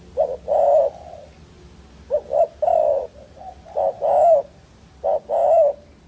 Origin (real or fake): real